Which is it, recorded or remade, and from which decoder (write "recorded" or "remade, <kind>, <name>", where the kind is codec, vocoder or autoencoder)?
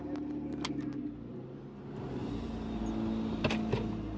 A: recorded